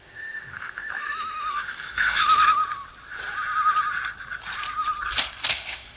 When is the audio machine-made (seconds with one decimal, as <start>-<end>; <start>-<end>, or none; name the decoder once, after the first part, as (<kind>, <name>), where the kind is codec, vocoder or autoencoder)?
0.0-2.6 (autoencoder, DAC-VAE); 5.5-6.0